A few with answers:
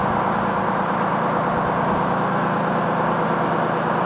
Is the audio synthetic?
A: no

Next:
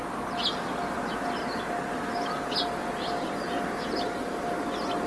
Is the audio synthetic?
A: no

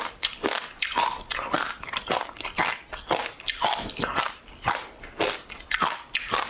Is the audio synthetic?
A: no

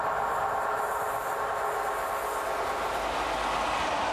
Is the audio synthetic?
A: no